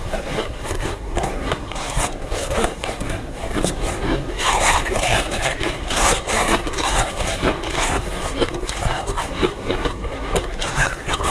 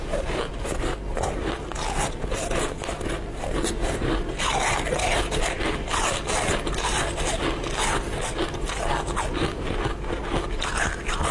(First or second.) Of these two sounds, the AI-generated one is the first